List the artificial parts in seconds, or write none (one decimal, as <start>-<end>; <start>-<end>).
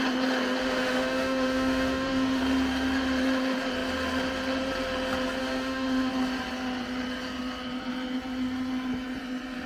0.6-2.4; 5.4-6.1